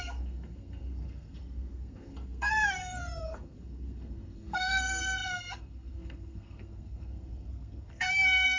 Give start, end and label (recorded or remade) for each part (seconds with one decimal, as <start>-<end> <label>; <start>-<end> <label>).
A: 0.0-8.6 remade